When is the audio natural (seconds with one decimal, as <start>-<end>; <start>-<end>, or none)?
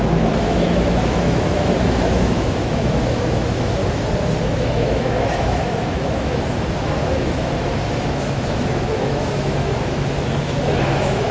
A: 3.8-4.4